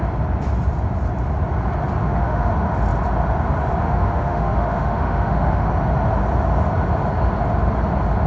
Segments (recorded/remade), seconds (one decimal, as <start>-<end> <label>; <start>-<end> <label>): 0.0-2.0 recorded; 2.0-2.5 remade; 2.5-3.8 recorded; 3.8-5.7 remade; 5.7-8.3 recorded